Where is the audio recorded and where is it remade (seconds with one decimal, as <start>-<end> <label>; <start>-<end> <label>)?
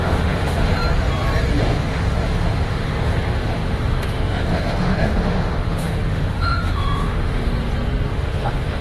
0.0-0.7 remade; 0.7-1.5 recorded; 1.5-7.5 remade; 7.5-8.1 recorded; 8.1-8.8 remade